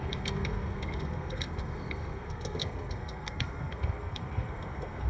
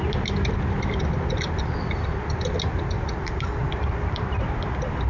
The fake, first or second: first